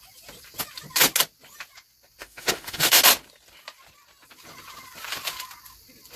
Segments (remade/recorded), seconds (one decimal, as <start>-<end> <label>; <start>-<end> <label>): 0.0-2.2 recorded; 2.2-3.0 remade; 3.0-6.2 recorded